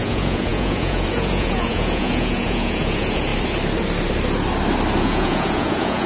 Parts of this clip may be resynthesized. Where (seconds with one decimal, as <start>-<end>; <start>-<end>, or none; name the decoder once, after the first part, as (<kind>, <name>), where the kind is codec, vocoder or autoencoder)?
0.0-3.3 (vocoder, Vocos); 5.0-6.1